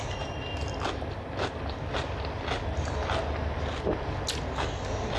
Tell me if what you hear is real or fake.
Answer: real